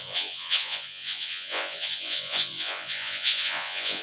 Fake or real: fake